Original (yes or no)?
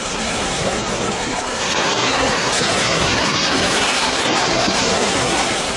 no